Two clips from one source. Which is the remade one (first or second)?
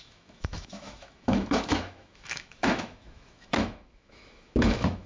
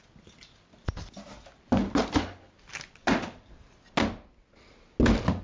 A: first